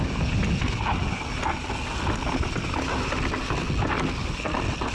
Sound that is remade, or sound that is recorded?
recorded